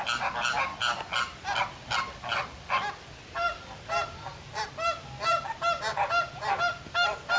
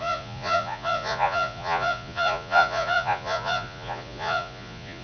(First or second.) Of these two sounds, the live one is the first